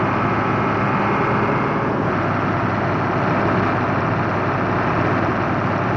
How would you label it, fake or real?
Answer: real